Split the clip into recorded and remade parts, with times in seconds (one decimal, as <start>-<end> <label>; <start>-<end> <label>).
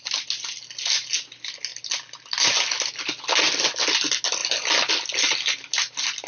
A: 0.0-6.3 recorded